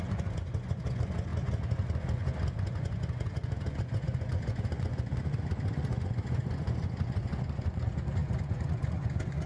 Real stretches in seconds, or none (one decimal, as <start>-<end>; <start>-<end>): none